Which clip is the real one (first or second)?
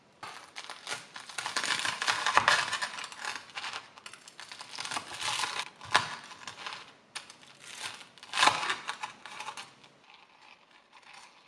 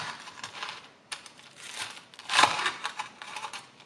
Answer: first